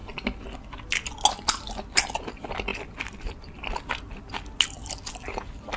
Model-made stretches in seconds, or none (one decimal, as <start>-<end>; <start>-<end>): none

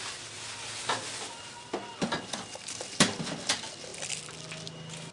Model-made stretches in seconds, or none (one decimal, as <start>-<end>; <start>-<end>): none